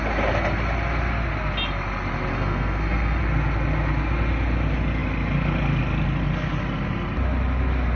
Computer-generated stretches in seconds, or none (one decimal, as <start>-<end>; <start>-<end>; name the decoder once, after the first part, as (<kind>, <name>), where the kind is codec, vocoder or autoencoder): 2.3-3.2 (codec, SNAC)